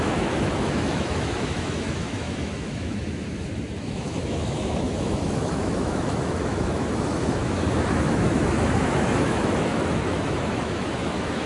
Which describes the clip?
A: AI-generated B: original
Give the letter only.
A